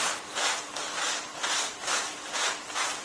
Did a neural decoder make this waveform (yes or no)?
yes